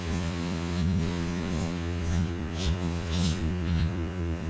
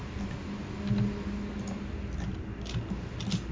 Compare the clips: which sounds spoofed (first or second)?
first